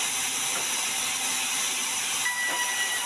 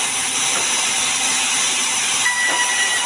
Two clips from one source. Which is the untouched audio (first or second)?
first